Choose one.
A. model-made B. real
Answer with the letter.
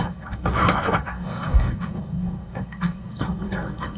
A